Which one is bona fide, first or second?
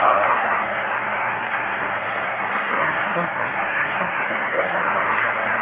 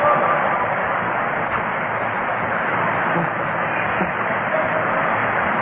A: second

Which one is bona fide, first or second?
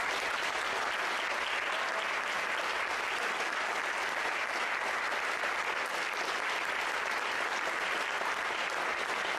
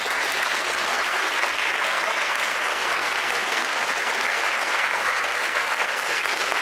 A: first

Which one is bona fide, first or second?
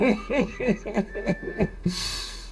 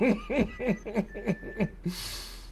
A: second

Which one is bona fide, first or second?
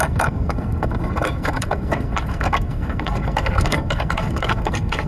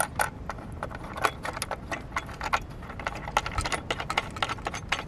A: second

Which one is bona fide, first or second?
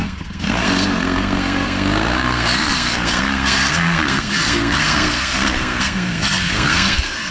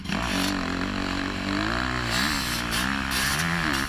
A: second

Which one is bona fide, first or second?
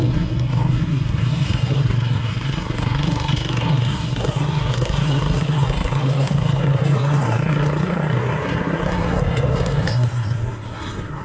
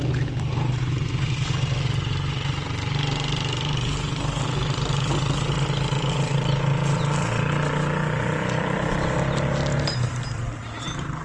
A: second